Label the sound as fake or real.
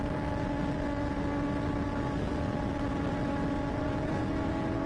real